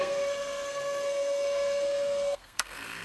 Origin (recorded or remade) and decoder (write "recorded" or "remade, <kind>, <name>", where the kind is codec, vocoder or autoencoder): remade, codec, SNAC